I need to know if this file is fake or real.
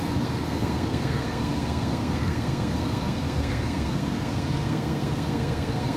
fake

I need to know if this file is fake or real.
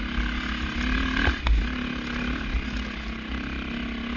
real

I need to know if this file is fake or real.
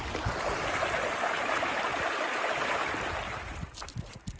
real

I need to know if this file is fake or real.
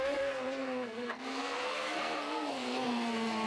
fake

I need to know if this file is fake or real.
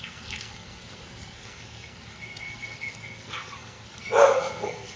fake